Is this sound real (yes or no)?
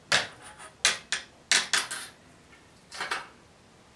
yes